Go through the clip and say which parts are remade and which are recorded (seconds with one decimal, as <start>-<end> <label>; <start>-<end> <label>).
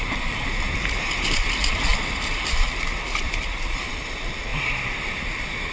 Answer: 0.0-1.9 recorded; 1.9-3.9 remade; 3.9-5.7 recorded